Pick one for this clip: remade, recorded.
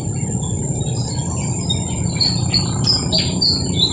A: recorded